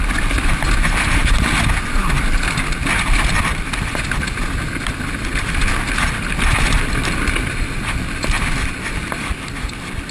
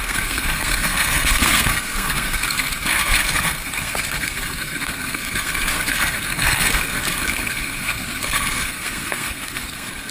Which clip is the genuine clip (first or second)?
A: first